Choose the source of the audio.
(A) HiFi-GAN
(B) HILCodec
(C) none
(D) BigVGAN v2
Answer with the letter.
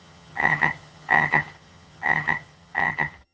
A